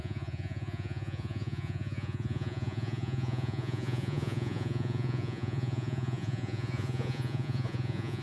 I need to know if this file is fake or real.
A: fake